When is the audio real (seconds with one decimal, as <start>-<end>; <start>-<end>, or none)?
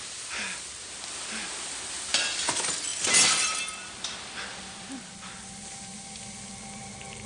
0.0-7.3